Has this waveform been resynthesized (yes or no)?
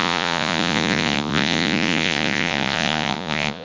yes